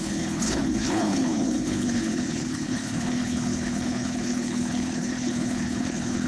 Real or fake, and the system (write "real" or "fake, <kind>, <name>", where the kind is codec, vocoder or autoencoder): fake, codec, HILCodec